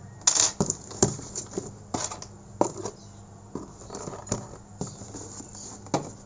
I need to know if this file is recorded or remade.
recorded